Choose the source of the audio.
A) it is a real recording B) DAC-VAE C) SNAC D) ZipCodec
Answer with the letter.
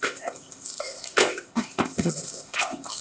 D